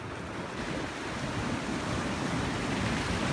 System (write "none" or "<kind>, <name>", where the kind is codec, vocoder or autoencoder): none